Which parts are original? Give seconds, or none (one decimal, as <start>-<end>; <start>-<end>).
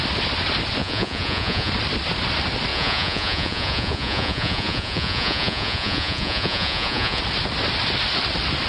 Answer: 0.0-0.8; 1.7-2.7; 7.2-8.7